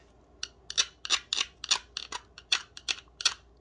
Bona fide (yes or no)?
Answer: yes